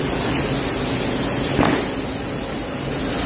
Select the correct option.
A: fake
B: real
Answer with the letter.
B